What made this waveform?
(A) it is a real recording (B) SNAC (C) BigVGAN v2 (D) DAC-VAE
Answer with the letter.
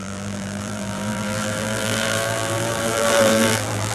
C